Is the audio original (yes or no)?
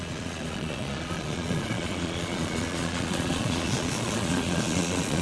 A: no